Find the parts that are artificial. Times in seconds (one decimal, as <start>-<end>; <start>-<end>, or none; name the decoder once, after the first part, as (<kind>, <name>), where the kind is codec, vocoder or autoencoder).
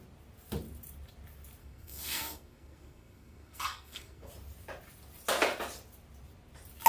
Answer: 1.6-4.3 (codec, SNAC)